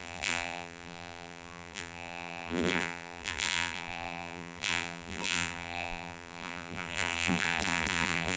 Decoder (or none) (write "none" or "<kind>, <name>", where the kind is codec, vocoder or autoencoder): vocoder, BigVGAN v2